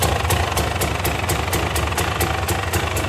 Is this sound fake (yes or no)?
no